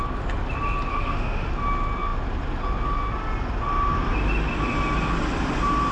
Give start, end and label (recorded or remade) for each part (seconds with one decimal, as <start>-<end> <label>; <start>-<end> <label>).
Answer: 0.0-0.9 recorded; 0.9-1.5 remade; 1.5-5.9 recorded